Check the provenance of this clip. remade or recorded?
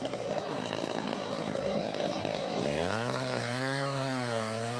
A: remade